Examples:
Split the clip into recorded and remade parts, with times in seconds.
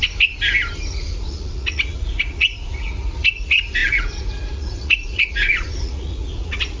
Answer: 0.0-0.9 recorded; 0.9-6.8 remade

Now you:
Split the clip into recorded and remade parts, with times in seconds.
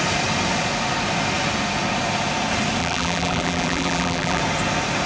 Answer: 0.0-2.8 recorded; 2.8-4.4 remade; 4.4-5.1 recorded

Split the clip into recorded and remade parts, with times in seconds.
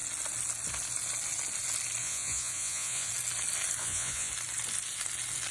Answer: 0.0-2.0 recorded; 2.0-3.1 remade; 3.1-3.8 recorded; 3.8-4.3 remade; 4.3-5.5 recorded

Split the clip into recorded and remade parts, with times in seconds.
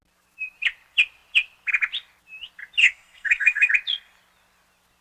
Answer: 0.0-2.8 recorded; 2.8-3.7 remade; 3.7-5.0 recorded